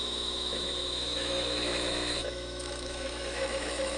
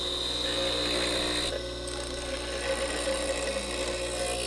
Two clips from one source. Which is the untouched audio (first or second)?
second